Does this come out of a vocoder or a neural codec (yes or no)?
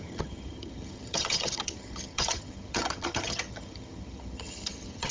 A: yes